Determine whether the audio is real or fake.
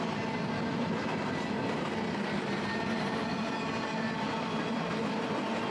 real